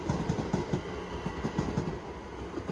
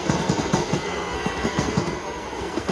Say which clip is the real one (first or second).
first